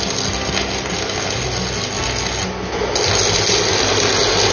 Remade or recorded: recorded